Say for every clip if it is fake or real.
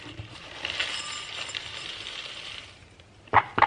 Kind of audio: fake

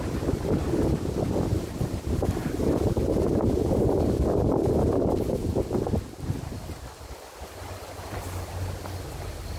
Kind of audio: real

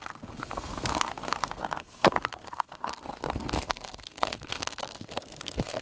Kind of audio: fake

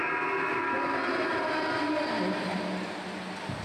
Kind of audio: real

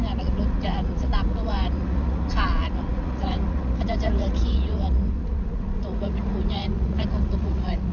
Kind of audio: fake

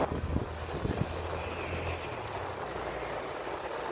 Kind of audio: real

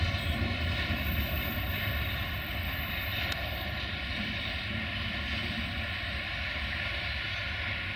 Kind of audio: real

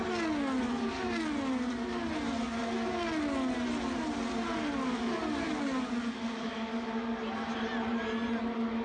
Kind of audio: real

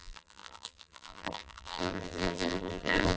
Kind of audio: fake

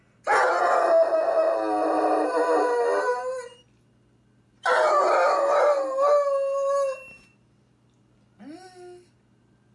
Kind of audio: real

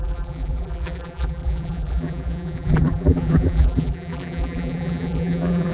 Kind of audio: fake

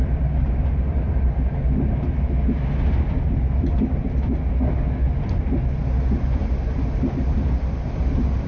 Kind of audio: real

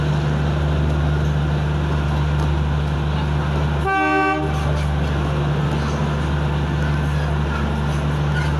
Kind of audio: real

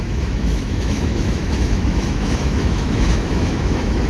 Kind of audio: fake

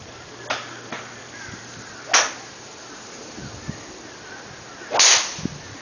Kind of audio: real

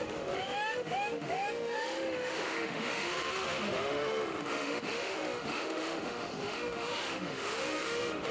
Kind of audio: fake